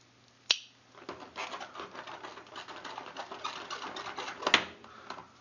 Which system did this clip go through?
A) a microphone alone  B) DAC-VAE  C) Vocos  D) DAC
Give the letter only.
A